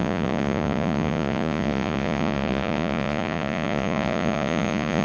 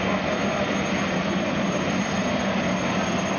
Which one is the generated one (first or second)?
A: first